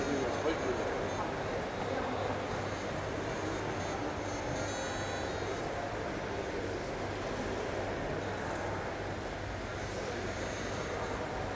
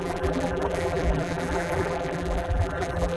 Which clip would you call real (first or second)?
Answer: first